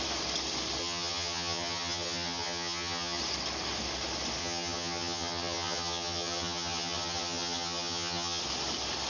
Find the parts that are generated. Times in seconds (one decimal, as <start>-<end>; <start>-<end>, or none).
0.8-3.2; 4.4-8.4